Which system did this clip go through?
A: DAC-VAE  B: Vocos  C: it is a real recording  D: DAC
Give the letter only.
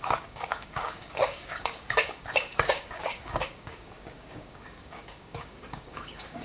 D